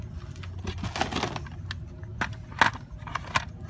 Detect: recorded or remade recorded